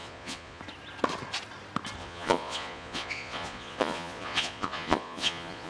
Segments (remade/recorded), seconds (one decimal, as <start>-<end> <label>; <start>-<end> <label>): 0.0-0.6 remade; 0.6-2.0 recorded; 2.0-5.7 remade